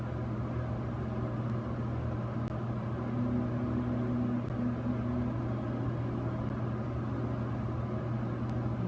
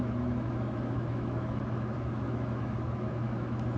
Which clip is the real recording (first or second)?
first